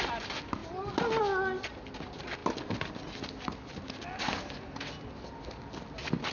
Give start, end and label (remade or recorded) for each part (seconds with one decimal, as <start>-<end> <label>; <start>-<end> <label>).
0.0-6.3 recorded